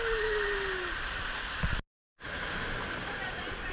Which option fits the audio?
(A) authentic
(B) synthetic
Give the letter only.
A